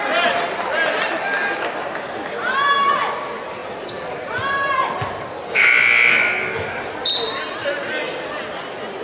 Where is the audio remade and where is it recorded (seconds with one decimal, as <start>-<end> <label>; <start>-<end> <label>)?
0.0-9.0 recorded